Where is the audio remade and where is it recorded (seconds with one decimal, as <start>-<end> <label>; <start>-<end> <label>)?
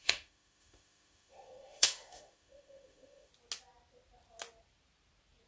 0.0-3.3 remade; 3.3-5.5 recorded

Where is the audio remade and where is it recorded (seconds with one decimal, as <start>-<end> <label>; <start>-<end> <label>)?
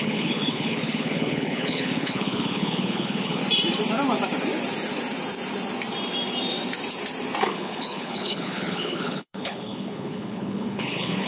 0.0-3.4 remade; 3.4-7.4 recorded; 7.4-11.3 remade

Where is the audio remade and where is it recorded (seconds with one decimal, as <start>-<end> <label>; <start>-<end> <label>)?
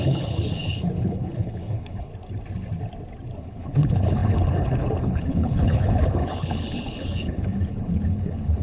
0.0-2.1 remade; 2.1-3.4 recorded; 3.4-8.6 remade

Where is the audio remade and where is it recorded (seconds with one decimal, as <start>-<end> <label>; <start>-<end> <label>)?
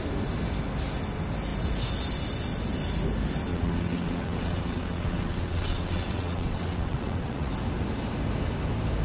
0.0-3.5 recorded; 3.5-7.5 remade; 7.5-9.0 recorded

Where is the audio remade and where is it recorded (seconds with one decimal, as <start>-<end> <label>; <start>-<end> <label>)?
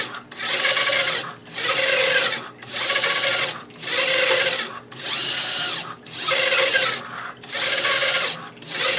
0.0-9.0 recorded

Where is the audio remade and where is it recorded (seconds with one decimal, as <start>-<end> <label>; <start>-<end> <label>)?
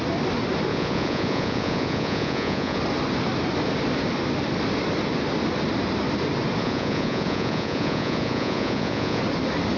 0.0-0.7 recorded; 0.7-2.8 remade; 2.8-6.6 recorded; 6.6-9.2 remade; 9.2-9.8 recorded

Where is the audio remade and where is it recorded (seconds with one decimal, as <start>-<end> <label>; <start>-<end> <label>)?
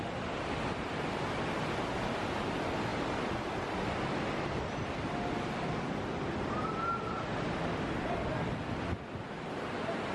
0.0-10.1 recorded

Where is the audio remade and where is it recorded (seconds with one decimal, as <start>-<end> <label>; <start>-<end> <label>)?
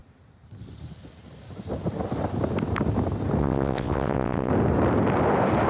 0.0-3.4 recorded; 3.4-4.5 remade; 4.5-5.7 recorded